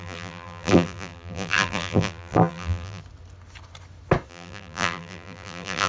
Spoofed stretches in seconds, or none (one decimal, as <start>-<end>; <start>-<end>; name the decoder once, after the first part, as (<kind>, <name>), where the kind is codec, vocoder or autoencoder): 0.0-3.0 (vocoder, BigVGAN v2); 4.3-5.9